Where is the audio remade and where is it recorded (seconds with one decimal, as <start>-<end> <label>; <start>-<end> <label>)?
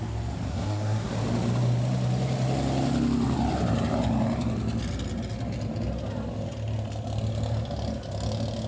0.0-0.5 recorded; 0.5-1.1 remade; 1.1-8.7 recorded